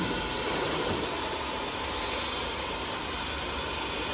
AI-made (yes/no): no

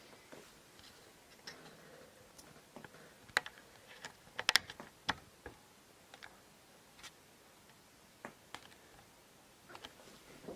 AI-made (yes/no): no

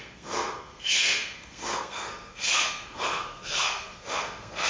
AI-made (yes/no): yes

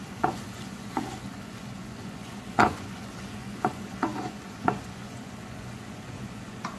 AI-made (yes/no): yes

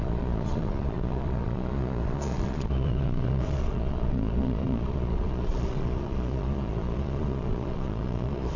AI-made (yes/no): yes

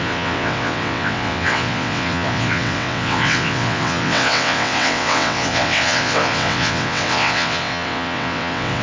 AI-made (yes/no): yes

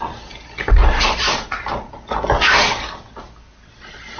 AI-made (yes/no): no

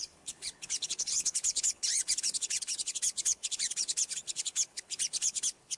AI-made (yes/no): yes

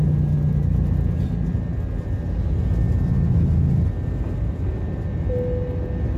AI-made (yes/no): no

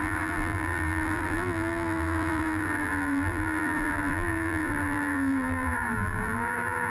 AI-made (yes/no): yes